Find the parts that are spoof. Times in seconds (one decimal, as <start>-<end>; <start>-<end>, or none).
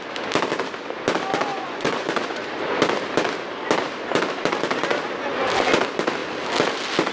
1.5-2.5